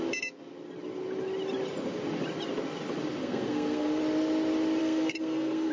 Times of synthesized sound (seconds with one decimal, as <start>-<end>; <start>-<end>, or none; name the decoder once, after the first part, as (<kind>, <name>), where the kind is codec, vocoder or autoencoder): 3.2-4.0 (codec, SNAC); 4.8-5.7